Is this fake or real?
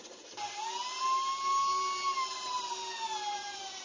real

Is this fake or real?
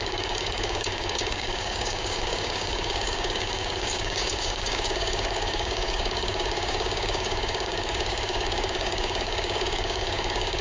fake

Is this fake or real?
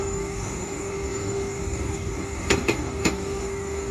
fake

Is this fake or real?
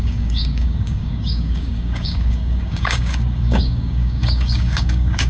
fake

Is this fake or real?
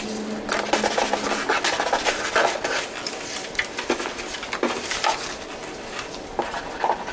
real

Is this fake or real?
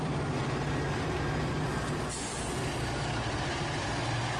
real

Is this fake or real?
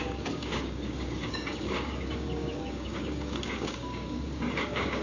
fake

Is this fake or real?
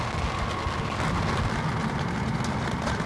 real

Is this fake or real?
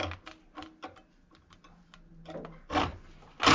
real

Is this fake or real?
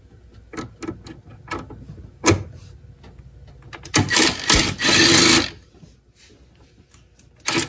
real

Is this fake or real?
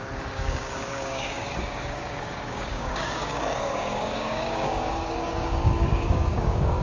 fake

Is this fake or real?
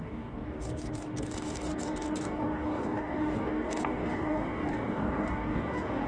fake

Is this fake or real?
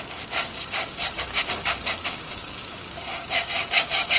fake